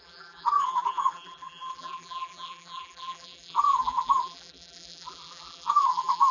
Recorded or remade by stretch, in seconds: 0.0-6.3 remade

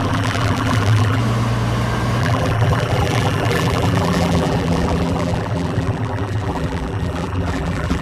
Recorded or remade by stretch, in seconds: 0.0-1.2 remade; 1.2-2.2 recorded; 2.2-8.0 remade

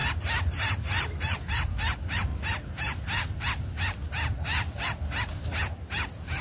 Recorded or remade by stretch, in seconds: 0.0-2.3 remade; 2.3-6.4 recorded